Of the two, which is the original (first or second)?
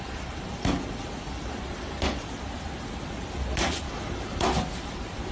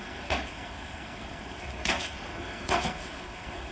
first